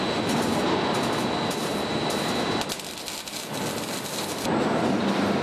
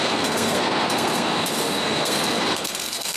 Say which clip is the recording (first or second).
first